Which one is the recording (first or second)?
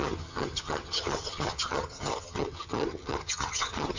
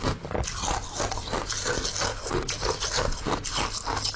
second